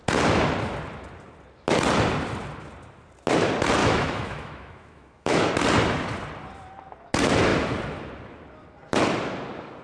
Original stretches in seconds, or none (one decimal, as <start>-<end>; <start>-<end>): 0.0-3.8; 5.5-9.8